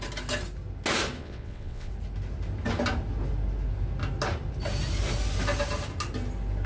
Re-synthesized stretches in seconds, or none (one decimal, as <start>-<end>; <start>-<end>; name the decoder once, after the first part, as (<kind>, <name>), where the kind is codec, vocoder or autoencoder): 1.2-1.9 (vocoder, WaveNeXt)